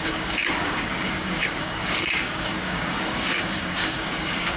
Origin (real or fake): fake